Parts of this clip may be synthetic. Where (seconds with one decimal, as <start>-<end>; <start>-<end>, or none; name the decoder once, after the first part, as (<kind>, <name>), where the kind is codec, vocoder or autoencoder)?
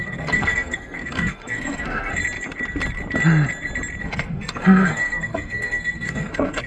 0.0-2.1 (codec, SNAC); 4.0-6.7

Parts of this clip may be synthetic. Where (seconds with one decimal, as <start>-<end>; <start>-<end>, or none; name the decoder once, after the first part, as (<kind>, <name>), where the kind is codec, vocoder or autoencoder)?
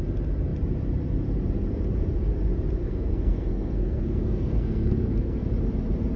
2.8-5.4 (codec, SNAC)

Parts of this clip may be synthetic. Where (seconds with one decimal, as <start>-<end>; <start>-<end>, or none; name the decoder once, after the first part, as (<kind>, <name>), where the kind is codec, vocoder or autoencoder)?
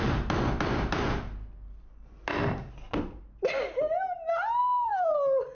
4.6-5.1 (codec, SNAC)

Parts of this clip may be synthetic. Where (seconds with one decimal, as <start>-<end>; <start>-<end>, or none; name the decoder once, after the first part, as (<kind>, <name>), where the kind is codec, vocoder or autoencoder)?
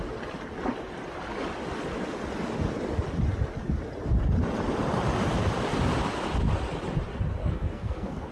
7.4-8.3 (codec, SNAC)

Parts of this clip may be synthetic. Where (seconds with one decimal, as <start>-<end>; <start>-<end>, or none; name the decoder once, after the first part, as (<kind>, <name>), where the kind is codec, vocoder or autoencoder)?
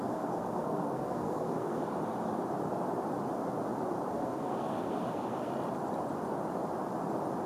0.0-1.8 (codec, SNAC); 4.1-5.5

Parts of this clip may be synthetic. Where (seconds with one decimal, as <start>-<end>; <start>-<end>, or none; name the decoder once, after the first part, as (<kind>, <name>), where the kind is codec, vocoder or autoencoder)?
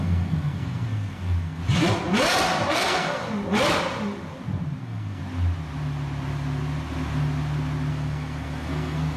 0.0-1.6 (codec, SNAC); 2.7-3.2; 4.8-5.2; 7.9-9.2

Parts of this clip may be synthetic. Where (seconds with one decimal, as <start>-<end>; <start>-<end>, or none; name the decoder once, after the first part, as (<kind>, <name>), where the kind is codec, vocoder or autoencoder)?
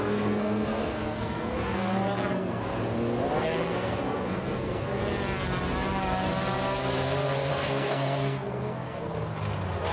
0.0-2.7 (codec, SNAC); 3.4-5.0; 7.5-9.1